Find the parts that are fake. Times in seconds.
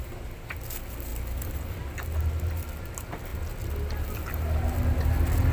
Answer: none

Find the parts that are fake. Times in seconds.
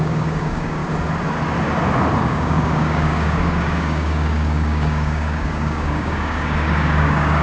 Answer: 0.0-0.8 (codec, DAC); 2.2-7.4